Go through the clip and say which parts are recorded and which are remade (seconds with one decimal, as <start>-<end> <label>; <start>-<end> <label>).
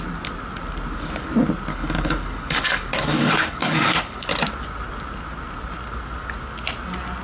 0.0-1.7 recorded; 1.7-4.3 remade; 4.3-7.2 recorded